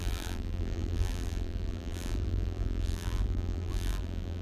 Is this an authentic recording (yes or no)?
no